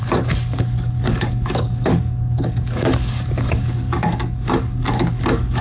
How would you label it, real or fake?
fake